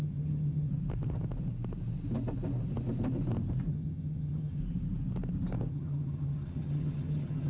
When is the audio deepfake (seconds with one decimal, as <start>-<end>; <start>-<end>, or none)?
0.0-0.7; 3.7-4.6; 5.7-7.5

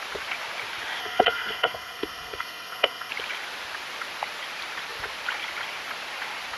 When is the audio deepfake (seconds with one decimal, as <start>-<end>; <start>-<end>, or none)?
1.0-3.1

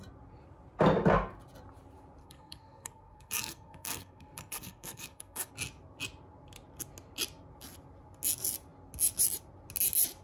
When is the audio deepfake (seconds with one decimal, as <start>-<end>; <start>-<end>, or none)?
2.2-5.5

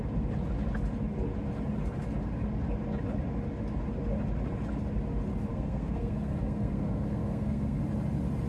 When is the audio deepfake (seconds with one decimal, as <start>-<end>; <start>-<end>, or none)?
5.5-7.8

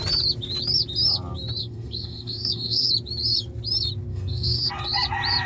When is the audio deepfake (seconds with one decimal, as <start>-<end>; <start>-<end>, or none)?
1.6-2.9; 4.1-4.7

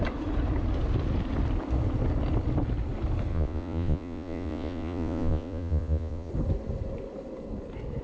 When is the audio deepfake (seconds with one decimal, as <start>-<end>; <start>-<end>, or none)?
3.3-6.3